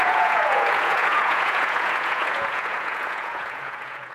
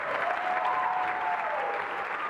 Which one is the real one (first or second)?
second